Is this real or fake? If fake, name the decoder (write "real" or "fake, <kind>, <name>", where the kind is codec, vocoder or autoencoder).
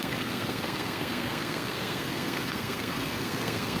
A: fake, codec, SNAC